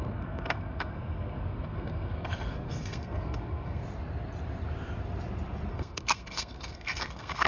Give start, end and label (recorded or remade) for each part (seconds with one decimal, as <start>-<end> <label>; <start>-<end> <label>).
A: 0.0-3.8 remade; 3.8-5.7 recorded; 5.7-7.5 remade

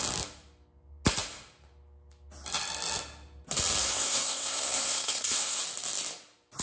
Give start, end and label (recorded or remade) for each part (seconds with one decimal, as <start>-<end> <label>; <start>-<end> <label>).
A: 0.0-3.8 recorded; 3.8-5.6 remade; 5.6-6.6 recorded

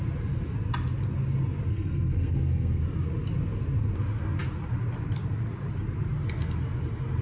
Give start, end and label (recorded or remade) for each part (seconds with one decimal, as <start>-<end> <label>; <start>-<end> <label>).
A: 0.0-1.7 recorded; 1.7-2.8 remade; 2.8-7.2 recorded

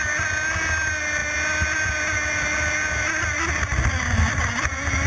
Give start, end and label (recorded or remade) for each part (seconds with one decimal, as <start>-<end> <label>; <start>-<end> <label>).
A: 0.0-5.1 recorded